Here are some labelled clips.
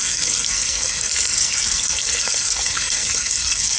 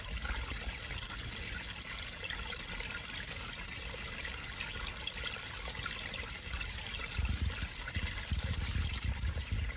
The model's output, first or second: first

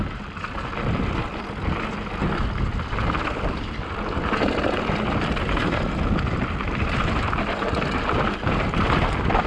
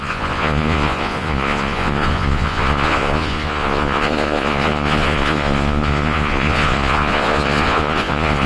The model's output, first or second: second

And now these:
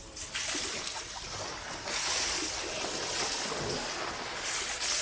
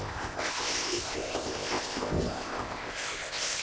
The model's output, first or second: second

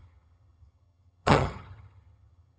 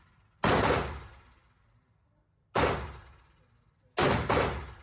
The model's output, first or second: first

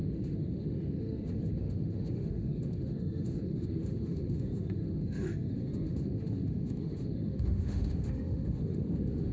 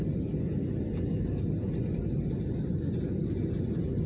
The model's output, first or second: first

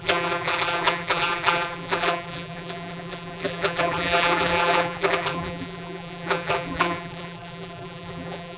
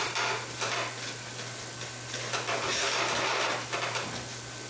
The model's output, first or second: first